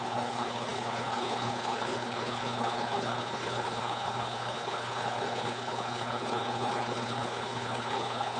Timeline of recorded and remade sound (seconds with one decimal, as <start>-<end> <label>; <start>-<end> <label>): 0.0-8.4 remade